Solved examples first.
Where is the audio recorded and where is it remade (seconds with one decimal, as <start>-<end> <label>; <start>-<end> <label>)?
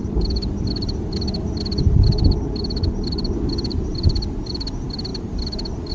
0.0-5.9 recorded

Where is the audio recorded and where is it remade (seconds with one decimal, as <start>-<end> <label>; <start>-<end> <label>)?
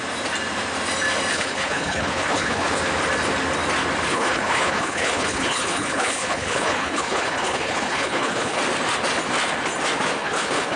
0.0-1.3 recorded; 1.3-2.8 remade; 2.8-4.1 recorded; 4.1-8.6 remade; 8.6-10.2 recorded; 10.2-10.8 remade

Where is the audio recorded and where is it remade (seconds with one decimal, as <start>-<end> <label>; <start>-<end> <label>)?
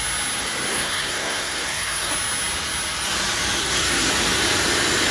0.0-0.7 recorded; 0.7-2.1 remade; 2.1-3.6 recorded; 3.6-4.1 remade; 4.1-5.1 recorded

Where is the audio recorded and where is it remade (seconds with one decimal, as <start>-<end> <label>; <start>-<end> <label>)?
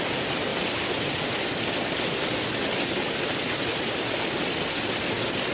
0.0-5.5 recorded